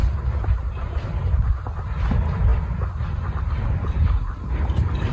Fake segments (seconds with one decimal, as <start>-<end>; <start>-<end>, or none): none